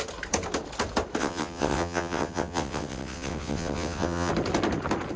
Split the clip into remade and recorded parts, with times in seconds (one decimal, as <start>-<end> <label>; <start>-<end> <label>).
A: 0.0-1.2 recorded; 1.2-4.3 remade; 4.3-5.2 recorded